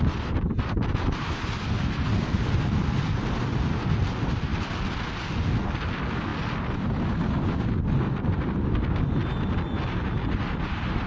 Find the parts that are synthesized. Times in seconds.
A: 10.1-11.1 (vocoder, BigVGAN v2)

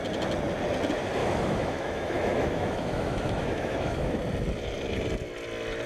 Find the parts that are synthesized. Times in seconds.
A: 1.2-4.2 (autoencoder, DAC-VAE)

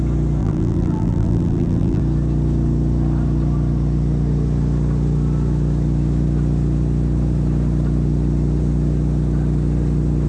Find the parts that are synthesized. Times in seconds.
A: 0.4-2.0 (vocoder, BigVGAN v2)

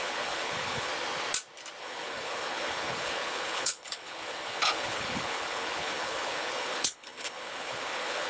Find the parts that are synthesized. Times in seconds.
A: 0.0-0.9 (codec, HILCodec); 1.8-8.3